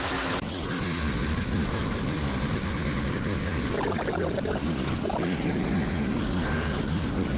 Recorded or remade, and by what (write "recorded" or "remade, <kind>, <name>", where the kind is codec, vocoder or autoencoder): recorded